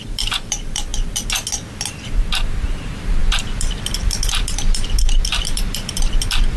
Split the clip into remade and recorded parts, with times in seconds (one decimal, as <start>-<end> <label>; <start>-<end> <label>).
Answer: 0.0-0.9 remade; 0.9-2.7 recorded; 2.7-6.6 remade